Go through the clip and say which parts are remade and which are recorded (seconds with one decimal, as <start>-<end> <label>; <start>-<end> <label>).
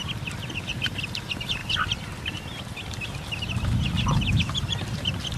0.0-5.4 recorded